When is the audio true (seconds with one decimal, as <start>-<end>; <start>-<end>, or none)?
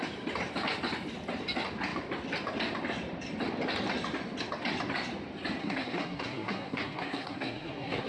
0.0-5.6